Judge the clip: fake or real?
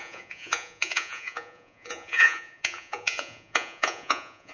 fake